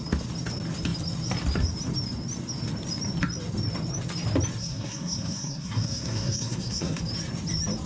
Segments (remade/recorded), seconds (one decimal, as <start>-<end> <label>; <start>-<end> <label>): 0.0-4.6 recorded; 4.6-7.0 remade; 7.0-7.9 recorded